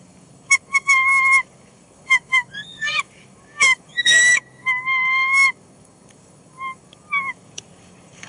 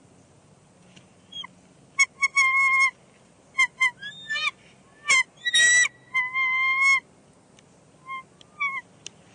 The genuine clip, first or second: second